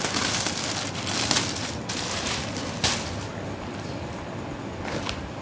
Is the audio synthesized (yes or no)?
no